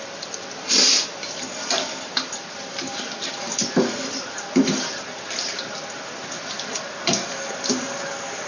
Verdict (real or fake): fake